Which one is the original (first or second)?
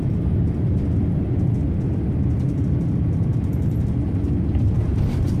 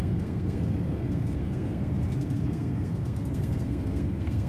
first